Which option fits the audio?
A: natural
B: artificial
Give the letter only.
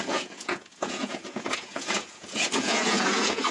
B